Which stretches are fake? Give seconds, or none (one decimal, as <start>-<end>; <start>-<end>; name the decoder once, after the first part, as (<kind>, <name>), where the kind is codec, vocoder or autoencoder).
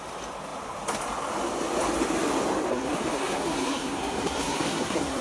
2.7-5.2 (codec, SNAC)